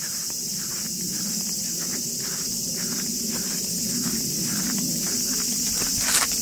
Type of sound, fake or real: real